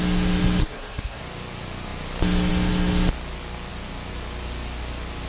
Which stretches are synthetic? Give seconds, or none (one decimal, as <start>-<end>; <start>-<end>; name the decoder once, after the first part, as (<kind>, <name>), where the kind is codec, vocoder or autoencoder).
0.6-1.2 (codec, SNAC)